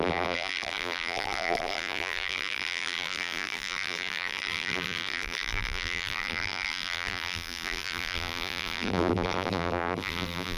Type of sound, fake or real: fake